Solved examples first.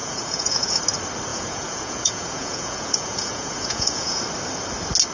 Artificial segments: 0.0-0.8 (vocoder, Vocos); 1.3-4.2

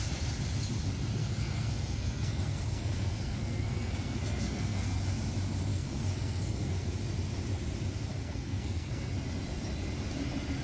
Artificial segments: 1.2-5.0 (codec, SNAC); 5.7-6.9; 8.1-9.1